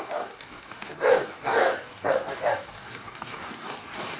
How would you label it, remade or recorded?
remade